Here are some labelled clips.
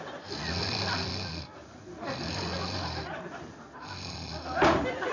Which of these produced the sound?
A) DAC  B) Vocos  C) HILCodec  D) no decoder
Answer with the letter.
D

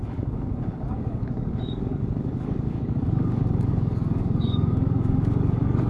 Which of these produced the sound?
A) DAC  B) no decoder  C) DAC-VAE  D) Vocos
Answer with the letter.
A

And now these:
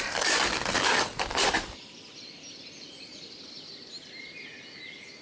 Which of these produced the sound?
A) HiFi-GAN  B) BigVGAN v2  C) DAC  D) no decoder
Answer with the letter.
D